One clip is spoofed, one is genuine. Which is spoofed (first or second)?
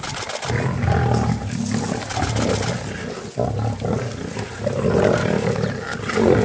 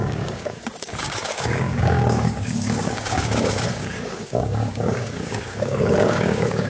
second